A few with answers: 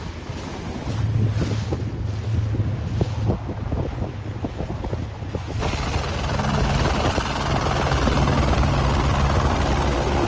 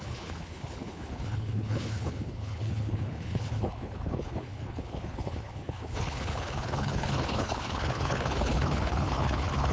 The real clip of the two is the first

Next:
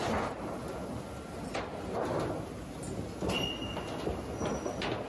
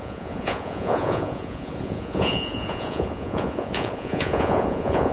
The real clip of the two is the first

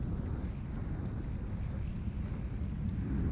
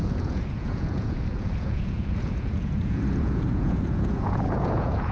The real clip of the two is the first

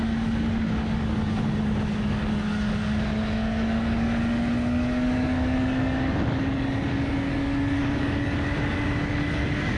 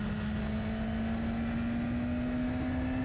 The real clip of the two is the second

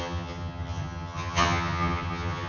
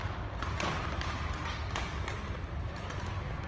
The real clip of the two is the second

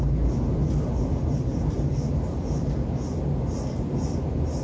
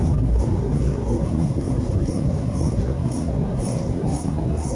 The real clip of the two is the first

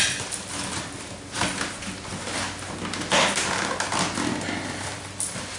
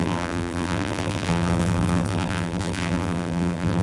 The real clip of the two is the first